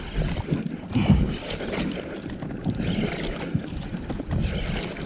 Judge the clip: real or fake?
real